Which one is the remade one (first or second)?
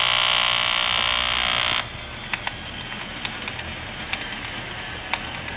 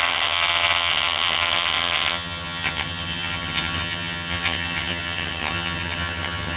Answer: second